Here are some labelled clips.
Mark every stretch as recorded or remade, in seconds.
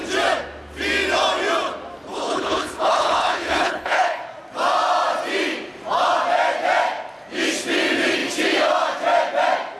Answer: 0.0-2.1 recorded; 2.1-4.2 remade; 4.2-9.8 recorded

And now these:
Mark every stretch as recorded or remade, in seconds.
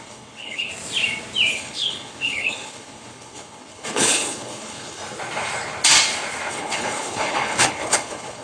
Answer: 0.0-0.7 remade; 0.7-1.5 recorded; 1.5-5.0 remade; 5.0-6.5 recorded; 6.5-8.4 remade